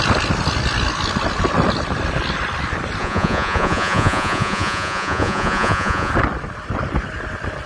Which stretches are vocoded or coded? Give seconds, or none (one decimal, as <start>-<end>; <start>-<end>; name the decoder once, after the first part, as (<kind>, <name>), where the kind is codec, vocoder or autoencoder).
3.0-6.1 (vocoder, Vocos)